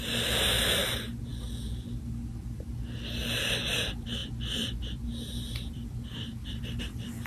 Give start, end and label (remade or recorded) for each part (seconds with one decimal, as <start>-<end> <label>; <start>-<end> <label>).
0.0-4.2 recorded; 4.2-6.8 remade; 6.8-7.3 recorded